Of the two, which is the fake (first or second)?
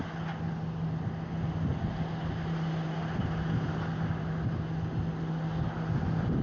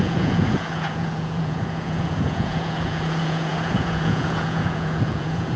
second